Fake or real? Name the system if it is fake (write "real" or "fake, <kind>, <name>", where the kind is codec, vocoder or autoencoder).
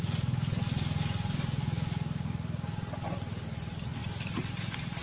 real